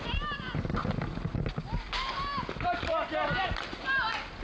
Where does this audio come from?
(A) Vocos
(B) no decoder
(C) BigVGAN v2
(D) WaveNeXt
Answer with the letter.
B